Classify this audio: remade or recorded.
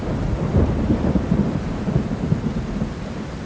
recorded